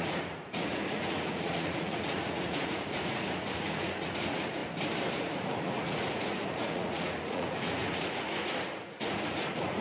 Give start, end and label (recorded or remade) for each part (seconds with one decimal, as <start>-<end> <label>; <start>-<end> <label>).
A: 0.0-4.6 remade; 4.6-5.1 recorded; 5.1-9.8 remade